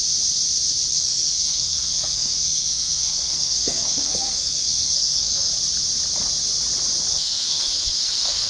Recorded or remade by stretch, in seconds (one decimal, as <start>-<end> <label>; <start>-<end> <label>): 0.0-0.9 recorded; 0.9-5.5 remade; 5.5-7.1 recorded; 7.1-8.5 remade